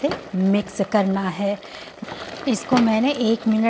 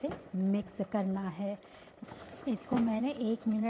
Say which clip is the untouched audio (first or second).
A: first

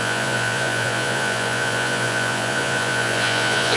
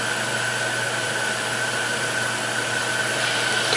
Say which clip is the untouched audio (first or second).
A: second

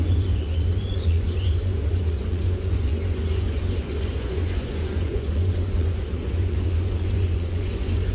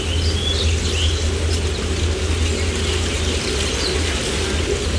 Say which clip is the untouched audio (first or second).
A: second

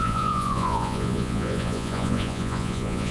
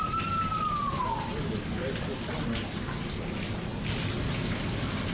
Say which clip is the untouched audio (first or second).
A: second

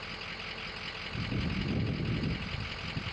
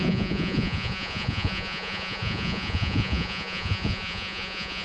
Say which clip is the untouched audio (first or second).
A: first